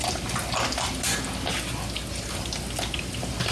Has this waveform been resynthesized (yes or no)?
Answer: no